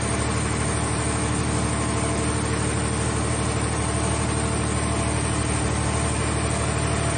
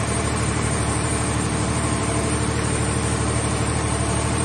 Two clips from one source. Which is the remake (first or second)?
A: second